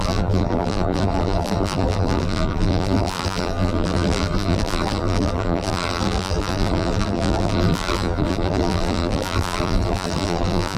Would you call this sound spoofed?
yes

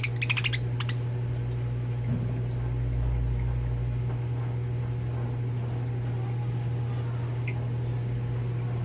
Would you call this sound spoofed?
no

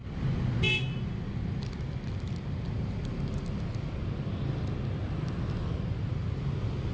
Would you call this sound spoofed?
no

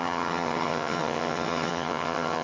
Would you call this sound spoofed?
yes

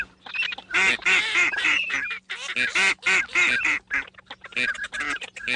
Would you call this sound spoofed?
no